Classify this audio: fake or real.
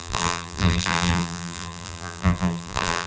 fake